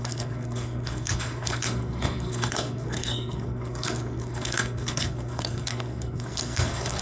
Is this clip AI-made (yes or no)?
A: yes